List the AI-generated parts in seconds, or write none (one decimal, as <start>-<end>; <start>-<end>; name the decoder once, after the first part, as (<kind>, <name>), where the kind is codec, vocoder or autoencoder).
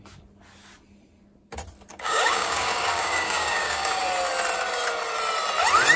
1.9-4.0 (codec, DAC)